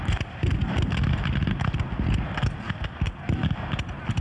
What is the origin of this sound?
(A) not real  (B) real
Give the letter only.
B